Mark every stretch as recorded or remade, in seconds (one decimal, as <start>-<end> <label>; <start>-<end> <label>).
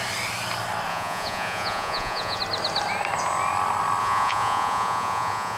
0.0-0.9 recorded; 0.9-2.4 remade; 2.4-4.0 recorded; 4.0-5.6 remade